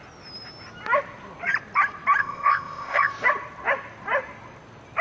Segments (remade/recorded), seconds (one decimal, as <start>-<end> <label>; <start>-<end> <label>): 0.0-2.2 recorded; 2.2-3.1 remade; 3.1-5.0 recorded

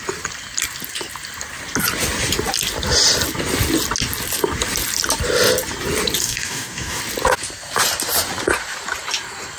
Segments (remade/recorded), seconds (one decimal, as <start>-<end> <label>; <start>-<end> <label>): 0.0-6.2 recorded; 6.2-7.0 remade; 7.0-9.6 recorded